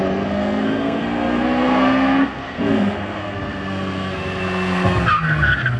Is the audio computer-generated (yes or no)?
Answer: yes